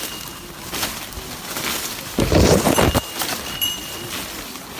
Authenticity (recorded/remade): recorded